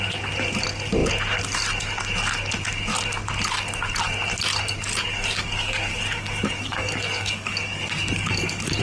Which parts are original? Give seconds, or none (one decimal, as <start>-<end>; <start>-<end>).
0.0-5.1